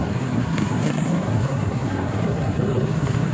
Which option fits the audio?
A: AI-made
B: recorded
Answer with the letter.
A